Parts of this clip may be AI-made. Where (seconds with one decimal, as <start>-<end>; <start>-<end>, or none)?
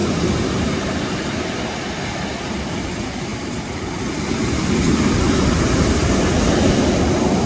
0.0-1.0; 3.3-3.9